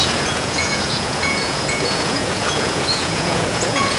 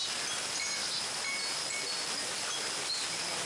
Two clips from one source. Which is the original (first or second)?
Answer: second